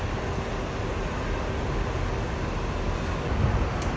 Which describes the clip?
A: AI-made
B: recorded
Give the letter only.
B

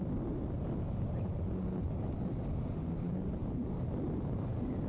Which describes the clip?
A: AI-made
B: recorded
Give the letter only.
B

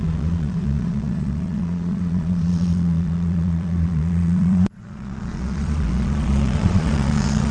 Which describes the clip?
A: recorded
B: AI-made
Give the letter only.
B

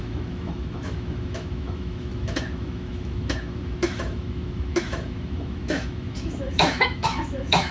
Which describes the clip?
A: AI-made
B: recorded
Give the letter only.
A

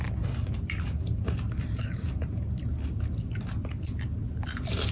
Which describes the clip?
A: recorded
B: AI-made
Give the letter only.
A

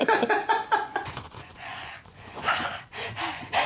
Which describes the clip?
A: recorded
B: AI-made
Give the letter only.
B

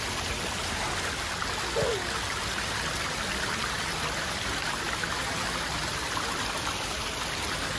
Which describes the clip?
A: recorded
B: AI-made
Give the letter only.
A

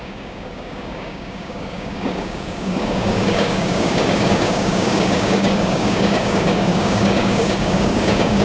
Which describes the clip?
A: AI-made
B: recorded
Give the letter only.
A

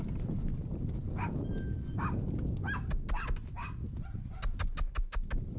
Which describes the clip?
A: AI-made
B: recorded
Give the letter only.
B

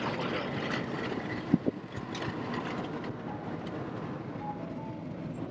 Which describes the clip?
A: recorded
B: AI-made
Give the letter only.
A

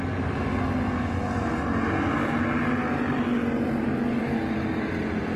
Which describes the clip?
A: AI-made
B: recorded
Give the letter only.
B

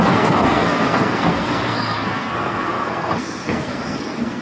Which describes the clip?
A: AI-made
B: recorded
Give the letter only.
A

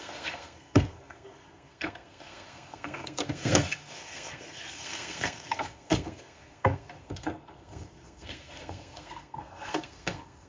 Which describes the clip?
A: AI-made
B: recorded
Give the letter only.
A